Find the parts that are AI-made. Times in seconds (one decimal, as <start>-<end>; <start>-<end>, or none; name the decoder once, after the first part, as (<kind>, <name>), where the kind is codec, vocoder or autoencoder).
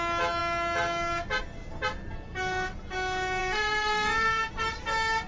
3.4-4.5 (codec, SNAC)